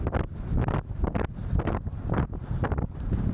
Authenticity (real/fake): real